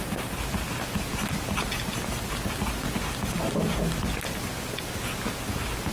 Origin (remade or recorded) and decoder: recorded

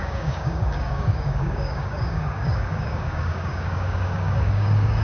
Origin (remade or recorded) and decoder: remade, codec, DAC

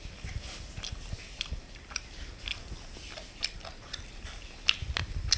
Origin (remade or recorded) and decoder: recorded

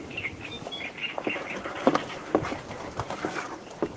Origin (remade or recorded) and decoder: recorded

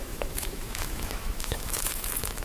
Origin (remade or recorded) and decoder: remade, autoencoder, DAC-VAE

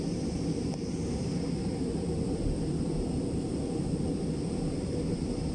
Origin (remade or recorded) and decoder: recorded